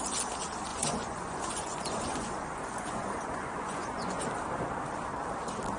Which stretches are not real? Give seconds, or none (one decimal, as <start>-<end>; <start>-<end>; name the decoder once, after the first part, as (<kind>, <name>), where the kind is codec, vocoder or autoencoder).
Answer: 0.7-4.2 (vocoder, Vocos)